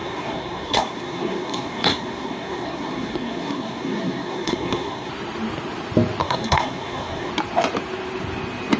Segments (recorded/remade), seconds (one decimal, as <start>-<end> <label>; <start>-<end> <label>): 0.0-5.1 remade; 5.1-6.2 recorded; 6.2-7.3 remade; 7.3-8.8 recorded